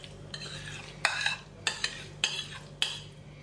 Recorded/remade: recorded